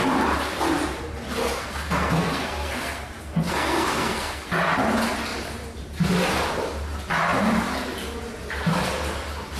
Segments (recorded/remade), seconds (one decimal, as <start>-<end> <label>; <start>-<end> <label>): 0.0-1.4 recorded; 1.4-4.5 remade; 4.5-9.6 recorded